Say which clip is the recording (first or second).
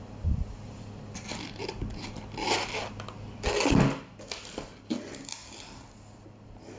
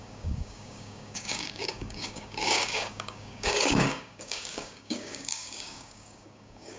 first